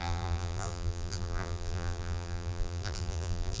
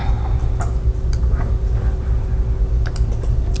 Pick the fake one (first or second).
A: first